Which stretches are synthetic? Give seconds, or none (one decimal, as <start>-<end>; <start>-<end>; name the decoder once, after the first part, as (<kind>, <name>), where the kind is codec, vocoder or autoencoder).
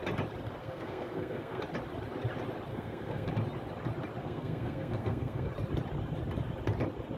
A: 0.6-1.6 (codec, SNAC); 2.7-3.3; 4.2-5.5